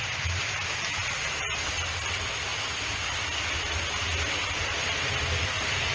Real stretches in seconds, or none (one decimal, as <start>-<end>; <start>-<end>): 0.0-5.9